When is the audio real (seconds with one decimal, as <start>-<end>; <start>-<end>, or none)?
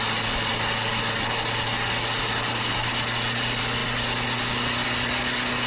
0.0-5.7